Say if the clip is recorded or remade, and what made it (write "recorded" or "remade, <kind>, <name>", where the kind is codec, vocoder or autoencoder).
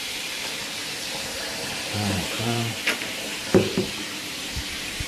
remade, vocoder, BigVGAN v2